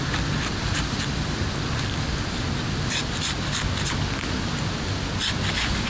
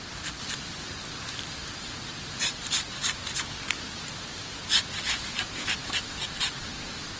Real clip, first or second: first